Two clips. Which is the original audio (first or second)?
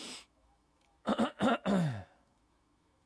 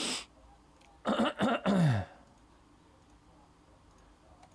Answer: second